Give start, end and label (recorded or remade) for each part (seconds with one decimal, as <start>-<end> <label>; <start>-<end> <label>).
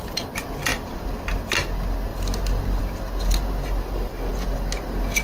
0.0-5.2 recorded